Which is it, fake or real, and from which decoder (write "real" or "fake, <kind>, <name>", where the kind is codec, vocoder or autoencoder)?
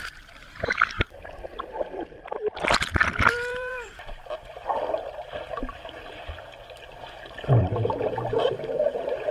fake, vocoder, BigVGAN v2